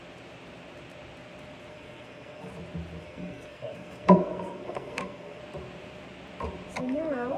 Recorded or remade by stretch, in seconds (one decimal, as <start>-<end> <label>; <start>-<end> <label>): 0.0-1.7 recorded; 1.7-2.5 remade; 2.5-3.0 recorded; 3.0-5.4 remade; 5.4-6.8 recorded; 6.8-7.4 remade